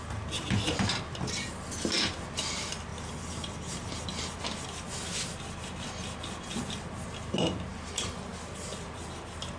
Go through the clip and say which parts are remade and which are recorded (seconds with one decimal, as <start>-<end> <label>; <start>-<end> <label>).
0.0-2.9 recorded; 2.9-4.4 remade; 4.4-7.7 recorded; 7.7-8.3 remade; 8.3-9.6 recorded